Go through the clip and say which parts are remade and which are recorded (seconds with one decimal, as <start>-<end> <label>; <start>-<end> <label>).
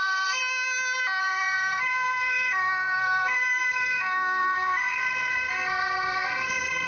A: 0.0-0.4 remade; 0.4-1.2 recorded; 1.2-6.9 remade